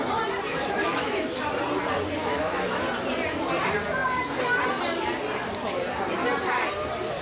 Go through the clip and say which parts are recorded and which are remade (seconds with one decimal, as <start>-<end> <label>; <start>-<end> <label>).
0.0-0.5 recorded; 0.5-1.4 remade; 1.4-2.2 recorded; 2.2-2.8 remade; 2.8-7.2 recorded